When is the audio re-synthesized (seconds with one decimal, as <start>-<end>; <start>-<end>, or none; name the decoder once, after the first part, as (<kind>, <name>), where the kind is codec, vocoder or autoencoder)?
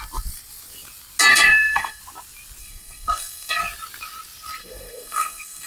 1.3-2.0 (codec, SNAC); 2.6-3.6; 4.6-5.7